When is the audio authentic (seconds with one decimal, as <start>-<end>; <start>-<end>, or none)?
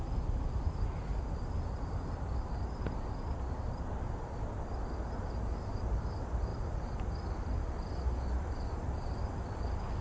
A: 0.0-10.0